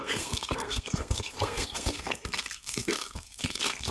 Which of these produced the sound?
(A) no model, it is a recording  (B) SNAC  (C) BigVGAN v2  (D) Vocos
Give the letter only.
B